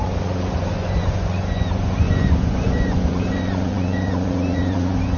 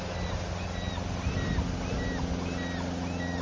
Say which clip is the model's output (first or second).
first